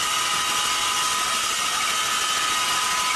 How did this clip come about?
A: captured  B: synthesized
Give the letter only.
A